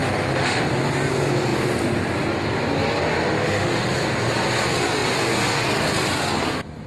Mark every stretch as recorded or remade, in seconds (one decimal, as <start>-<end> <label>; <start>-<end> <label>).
0.0-0.6 remade; 0.6-3.4 recorded; 3.4-3.9 remade; 3.9-6.9 recorded